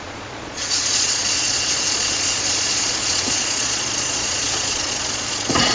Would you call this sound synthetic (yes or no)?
yes